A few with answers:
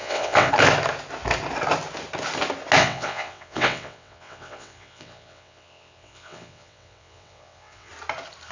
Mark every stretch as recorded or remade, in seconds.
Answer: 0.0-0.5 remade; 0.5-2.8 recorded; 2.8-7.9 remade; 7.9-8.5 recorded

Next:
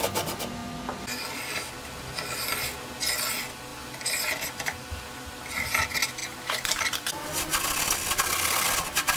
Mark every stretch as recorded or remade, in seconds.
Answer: 0.0-9.2 recorded

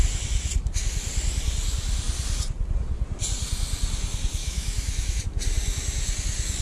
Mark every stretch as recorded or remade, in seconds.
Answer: 0.0-4.4 recorded; 4.4-5.2 remade; 5.2-6.6 recorded

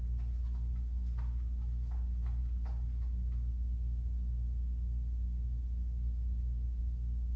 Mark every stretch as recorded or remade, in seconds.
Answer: 0.0-7.4 recorded

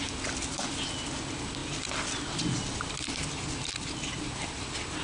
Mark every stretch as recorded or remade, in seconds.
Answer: 0.0-5.0 recorded

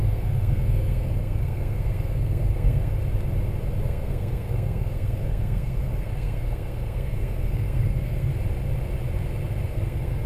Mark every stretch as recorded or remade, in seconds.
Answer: 0.0-2.9 remade; 2.9-3.8 recorded; 3.8-8.3 remade; 8.3-9.7 recorded; 9.7-10.3 remade

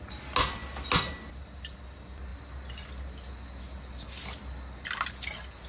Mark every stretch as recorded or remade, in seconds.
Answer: 0.0-5.7 recorded

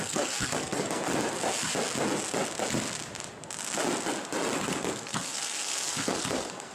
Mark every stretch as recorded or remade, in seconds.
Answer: 0.0-1.0 remade; 1.0-4.7 recorded; 4.7-6.7 remade